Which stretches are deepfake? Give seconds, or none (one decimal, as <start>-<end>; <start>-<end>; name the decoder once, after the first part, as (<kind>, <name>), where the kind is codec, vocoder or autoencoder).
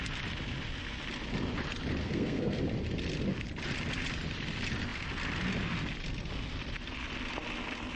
2.0-2.6 (codec, SNAC)